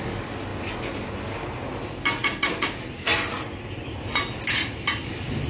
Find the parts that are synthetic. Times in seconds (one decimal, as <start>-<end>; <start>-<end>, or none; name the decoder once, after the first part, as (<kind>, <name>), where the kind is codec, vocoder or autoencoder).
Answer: none